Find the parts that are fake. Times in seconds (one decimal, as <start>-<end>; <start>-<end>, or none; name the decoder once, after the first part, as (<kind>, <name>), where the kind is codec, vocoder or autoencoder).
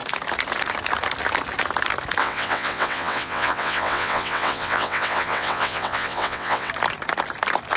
2.2-6.7 (vocoder, WaveNeXt)